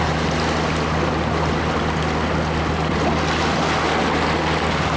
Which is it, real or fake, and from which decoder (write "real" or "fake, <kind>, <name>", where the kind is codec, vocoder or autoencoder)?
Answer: real